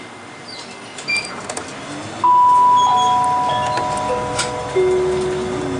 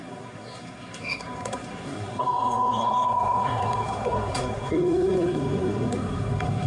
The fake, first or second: second